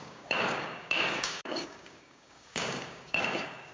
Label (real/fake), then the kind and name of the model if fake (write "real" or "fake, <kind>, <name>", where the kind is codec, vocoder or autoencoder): fake, codec, DAC